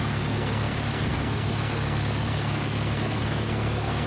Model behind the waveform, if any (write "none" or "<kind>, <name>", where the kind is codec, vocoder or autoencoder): codec, SNAC